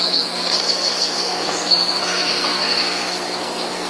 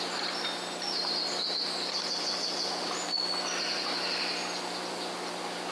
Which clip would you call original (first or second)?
second